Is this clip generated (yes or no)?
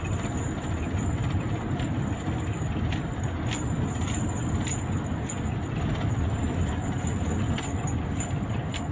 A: no